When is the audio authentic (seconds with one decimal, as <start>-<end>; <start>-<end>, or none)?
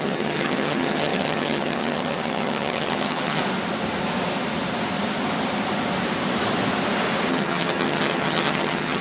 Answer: 3.4-7.3